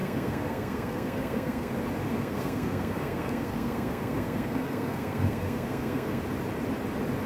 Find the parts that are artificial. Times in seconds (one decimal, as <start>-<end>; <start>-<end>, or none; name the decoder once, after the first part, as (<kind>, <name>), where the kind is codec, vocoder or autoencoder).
0.0-1.7 (codec, SNAC); 2.1-6.2

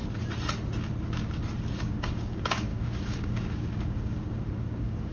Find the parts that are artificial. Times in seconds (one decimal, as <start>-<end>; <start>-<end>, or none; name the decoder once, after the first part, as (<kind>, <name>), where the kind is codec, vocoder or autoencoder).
1.8-5.1 (codec, DAC)

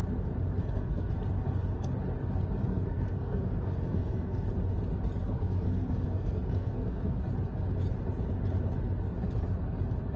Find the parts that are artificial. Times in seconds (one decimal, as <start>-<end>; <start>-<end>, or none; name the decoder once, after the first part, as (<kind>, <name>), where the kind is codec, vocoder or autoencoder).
0.6-1.1 (codec, SNAC); 2.6-4.5; 5.2-7.2

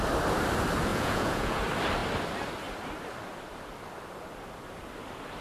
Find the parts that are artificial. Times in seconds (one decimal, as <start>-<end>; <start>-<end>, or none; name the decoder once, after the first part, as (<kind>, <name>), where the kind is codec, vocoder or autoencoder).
0.9-1.6 (vocoder, Vocos)

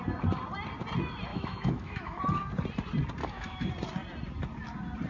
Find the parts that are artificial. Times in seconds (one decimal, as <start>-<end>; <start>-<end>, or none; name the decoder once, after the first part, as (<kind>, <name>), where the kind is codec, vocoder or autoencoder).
1.3-2.2 (autoencoder, DAC-VAE); 3.2-3.7

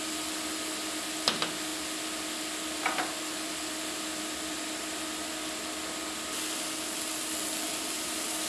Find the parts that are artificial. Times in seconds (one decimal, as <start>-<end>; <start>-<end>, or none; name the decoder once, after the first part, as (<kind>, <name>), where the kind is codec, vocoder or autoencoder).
none

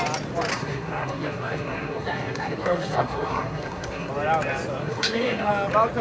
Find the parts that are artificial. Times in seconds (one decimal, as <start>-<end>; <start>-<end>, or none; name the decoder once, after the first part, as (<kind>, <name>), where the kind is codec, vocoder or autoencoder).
0.5-4.1 (codec, SNAC); 4.8-5.5